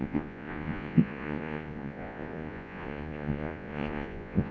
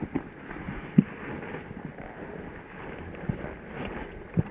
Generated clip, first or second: first